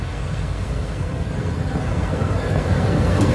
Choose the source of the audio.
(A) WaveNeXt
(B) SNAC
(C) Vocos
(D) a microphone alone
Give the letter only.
B